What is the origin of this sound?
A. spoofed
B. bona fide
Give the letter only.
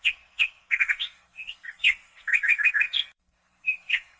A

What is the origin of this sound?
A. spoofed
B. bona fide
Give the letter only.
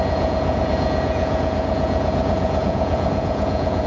A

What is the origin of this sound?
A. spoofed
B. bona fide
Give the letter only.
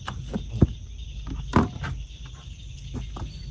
B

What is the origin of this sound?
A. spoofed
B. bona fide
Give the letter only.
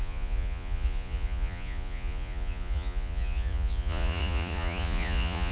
A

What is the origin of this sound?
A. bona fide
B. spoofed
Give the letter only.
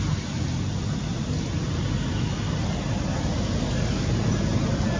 A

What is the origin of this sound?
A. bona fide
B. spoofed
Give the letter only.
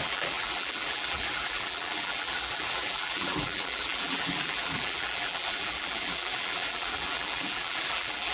B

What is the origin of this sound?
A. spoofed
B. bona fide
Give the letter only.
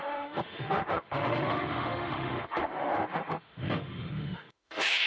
A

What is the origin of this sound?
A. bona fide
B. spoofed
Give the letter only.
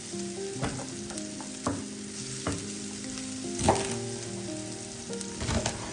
A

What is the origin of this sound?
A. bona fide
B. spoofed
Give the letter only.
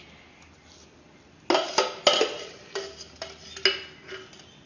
A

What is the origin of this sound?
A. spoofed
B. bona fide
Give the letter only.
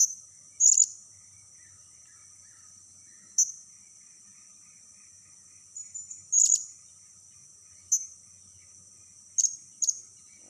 B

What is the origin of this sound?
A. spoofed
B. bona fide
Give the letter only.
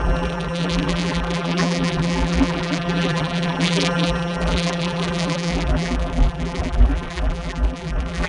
A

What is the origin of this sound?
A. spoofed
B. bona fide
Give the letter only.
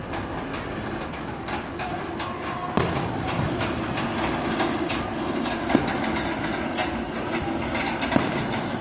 B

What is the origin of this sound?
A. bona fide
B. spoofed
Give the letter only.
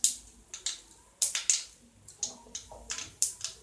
A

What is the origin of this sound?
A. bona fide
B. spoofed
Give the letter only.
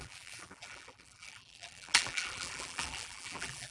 B